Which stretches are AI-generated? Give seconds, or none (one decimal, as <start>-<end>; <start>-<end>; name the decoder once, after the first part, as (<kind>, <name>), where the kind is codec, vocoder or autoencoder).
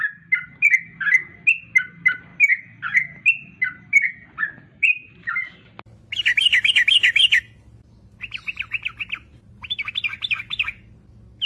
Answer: 9.3-9.9 (vocoder, BigVGAN v2)